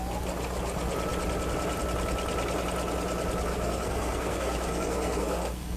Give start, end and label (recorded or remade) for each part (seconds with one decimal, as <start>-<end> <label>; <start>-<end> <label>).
0.0-3.5 recorded; 3.5-5.8 remade